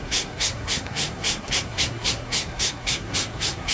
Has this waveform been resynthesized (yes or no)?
yes